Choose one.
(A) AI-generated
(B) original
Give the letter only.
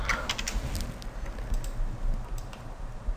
B